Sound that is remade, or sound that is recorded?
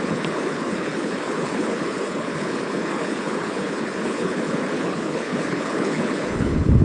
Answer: remade